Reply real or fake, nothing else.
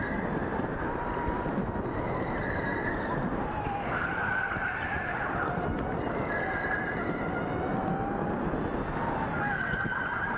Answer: real